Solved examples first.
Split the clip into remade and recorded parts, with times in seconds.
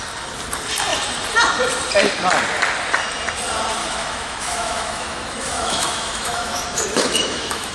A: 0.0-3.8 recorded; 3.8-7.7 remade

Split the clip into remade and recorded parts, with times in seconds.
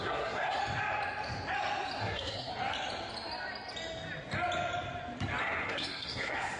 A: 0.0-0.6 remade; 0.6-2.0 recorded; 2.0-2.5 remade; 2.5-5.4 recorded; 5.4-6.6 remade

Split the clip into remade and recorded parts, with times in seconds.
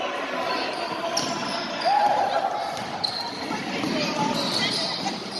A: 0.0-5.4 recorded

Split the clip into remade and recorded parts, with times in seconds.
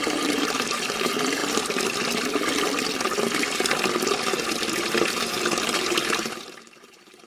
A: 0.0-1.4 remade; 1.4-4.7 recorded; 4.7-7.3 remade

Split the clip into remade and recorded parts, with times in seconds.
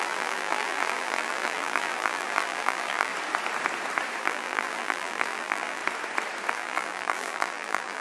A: 0.0-3.1 remade; 3.1-4.2 recorded; 4.2-5.8 remade; 5.8-6.5 recorded; 6.5-8.0 remade